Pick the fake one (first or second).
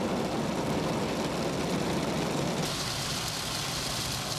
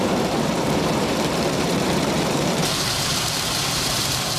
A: second